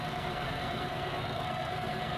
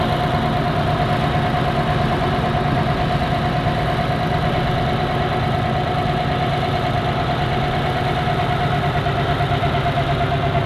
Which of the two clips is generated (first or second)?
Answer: first